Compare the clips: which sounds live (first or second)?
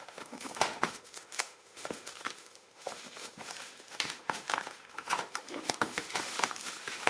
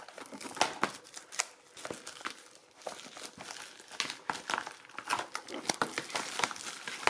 second